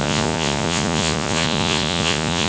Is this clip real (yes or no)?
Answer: no